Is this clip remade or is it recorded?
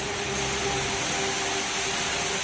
recorded